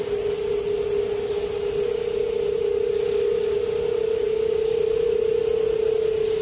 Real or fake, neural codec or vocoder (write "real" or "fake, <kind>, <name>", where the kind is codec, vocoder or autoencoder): real